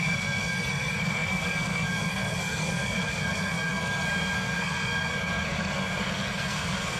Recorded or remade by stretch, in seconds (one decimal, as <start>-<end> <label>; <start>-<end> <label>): 0.0-7.0 remade